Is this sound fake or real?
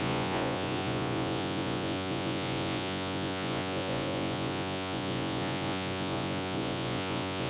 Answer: fake